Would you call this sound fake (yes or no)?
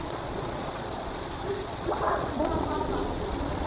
yes